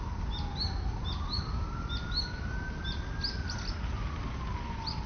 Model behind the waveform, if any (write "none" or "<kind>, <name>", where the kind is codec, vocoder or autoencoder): none